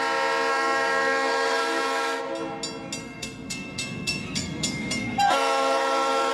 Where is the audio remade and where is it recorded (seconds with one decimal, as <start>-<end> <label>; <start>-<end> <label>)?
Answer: 0.0-0.5 recorded; 0.5-2.2 remade; 2.2-3.0 recorded; 3.0-6.3 remade